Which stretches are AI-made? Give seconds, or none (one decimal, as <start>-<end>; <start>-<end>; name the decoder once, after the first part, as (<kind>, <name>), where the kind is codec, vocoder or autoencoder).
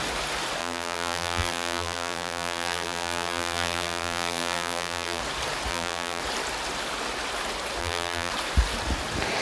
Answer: 0.6-5.2 (vocoder, BigVGAN v2); 5.7-6.2; 7.8-8.3